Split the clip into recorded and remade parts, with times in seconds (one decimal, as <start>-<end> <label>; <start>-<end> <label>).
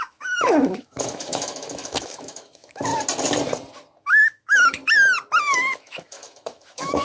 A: 0.0-2.9 remade; 2.9-4.0 recorded; 4.0-4.8 remade; 4.8-5.4 recorded; 5.4-7.0 remade